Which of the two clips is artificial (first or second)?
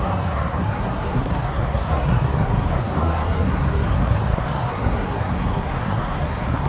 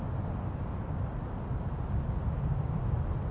first